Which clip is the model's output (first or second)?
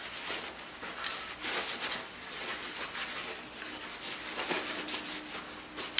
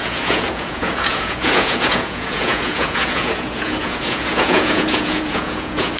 second